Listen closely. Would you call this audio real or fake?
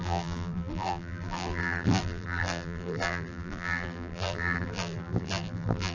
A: fake